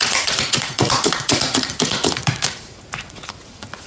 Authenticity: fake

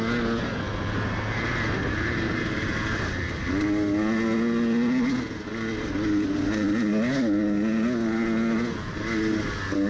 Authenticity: real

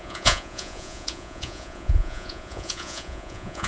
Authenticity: fake